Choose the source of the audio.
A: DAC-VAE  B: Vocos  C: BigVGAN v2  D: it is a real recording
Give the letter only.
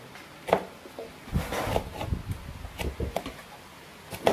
D